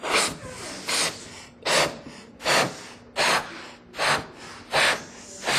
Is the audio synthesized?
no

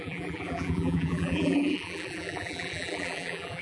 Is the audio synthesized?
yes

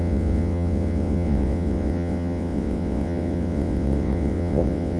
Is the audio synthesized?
yes